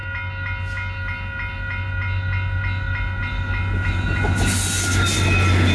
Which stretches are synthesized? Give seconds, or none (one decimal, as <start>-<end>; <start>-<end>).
none